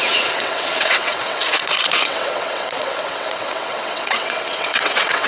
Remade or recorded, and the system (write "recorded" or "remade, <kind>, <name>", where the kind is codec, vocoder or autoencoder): remade, vocoder, WaveNeXt